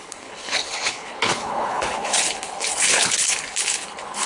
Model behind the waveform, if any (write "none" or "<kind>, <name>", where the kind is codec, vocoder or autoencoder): codec, HILCodec